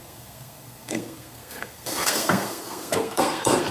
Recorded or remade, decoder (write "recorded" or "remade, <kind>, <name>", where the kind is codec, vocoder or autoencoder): remade, codec, SNAC